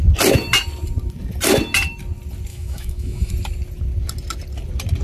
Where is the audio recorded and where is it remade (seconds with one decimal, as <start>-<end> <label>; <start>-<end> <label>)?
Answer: 0.0-2.5 recorded; 2.5-3.3 remade; 3.3-5.0 recorded